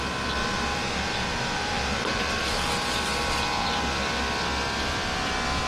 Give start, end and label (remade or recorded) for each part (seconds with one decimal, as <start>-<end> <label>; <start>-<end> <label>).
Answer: 0.0-0.4 recorded; 0.4-3.8 remade; 3.8-5.7 recorded